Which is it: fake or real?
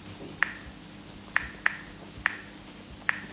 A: real